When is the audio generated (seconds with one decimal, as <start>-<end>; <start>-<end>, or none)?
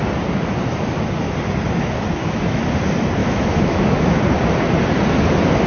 2.2-2.8; 3.2-4.2